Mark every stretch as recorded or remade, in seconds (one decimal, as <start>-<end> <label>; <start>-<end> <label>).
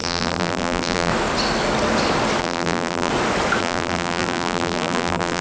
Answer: 0.0-1.1 remade; 1.1-2.4 recorded; 2.4-3.1 remade; 3.1-3.6 recorded; 3.6-5.4 remade